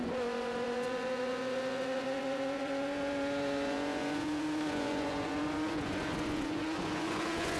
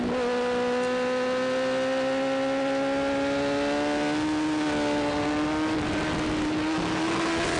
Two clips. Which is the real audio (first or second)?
second